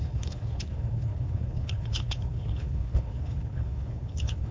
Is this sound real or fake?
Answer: fake